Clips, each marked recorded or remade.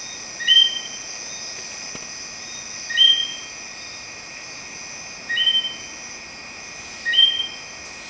recorded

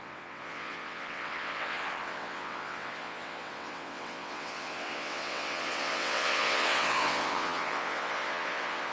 remade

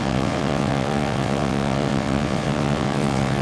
remade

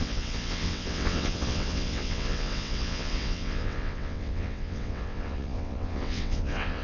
remade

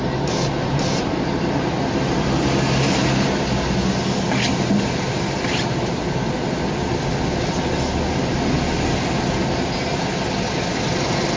recorded